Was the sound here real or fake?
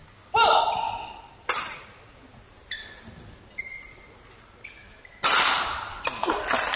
real